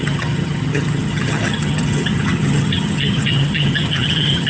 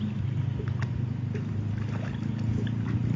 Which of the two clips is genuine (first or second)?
second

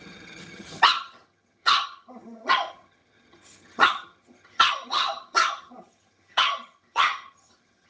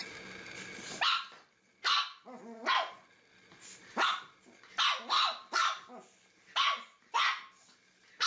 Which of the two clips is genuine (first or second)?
second